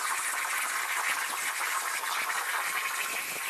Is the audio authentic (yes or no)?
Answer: yes